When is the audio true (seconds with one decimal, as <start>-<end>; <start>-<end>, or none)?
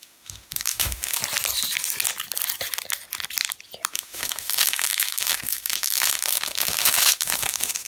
1.2-3.9